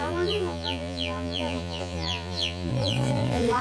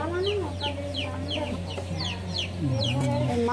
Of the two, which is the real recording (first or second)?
second